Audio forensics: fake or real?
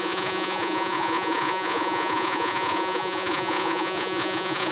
fake